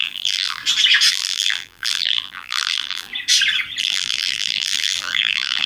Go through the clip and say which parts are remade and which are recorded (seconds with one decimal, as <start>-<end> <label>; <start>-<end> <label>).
0.0-0.6 remade; 0.6-1.1 recorded; 1.1-3.1 remade; 3.1-3.8 recorded; 3.8-5.7 remade